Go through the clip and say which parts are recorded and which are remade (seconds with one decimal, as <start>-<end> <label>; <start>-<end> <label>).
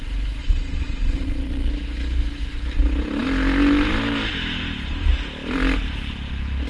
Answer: 0.0-0.4 recorded; 0.4-1.7 remade; 1.7-6.7 recorded